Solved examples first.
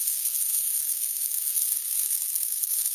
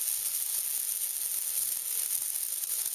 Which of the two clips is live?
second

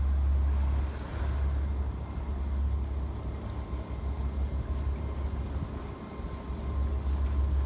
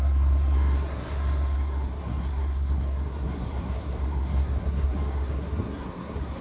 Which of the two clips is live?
first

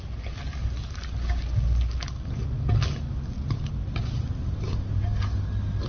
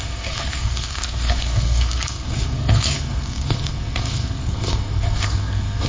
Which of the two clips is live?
first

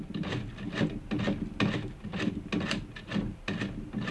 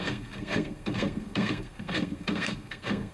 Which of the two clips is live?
first